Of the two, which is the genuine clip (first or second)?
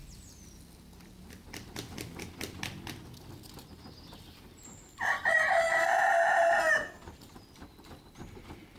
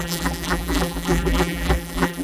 first